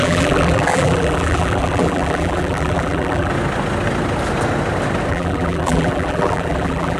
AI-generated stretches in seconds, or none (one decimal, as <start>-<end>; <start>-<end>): 0.0-3.3; 5.1-7.0